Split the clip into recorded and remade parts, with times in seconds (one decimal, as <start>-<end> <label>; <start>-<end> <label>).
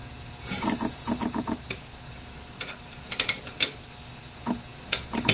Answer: 0.0-2.2 remade; 2.2-4.1 recorded; 4.1-5.3 remade